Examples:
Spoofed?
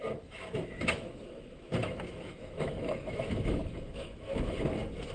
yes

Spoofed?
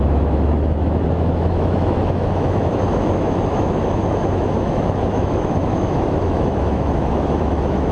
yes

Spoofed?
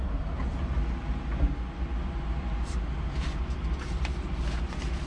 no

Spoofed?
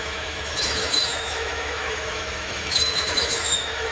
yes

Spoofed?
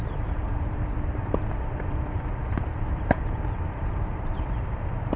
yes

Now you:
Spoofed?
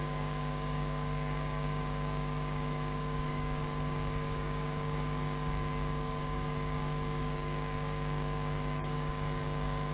yes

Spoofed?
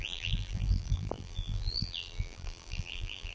yes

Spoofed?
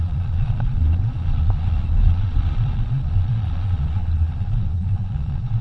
yes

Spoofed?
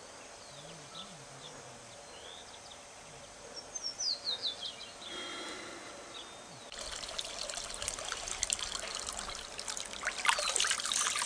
no